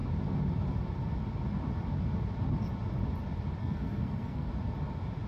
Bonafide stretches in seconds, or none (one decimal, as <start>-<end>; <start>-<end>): 0.0-3.6; 4.5-5.3